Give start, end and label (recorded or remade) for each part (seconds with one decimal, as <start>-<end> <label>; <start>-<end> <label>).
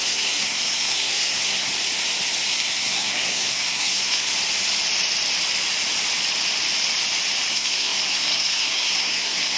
0.0-1.7 remade; 1.7-2.5 recorded; 2.5-4.3 remade; 4.3-7.5 recorded; 7.5-9.6 remade